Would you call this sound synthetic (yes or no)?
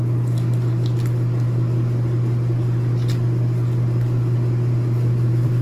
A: no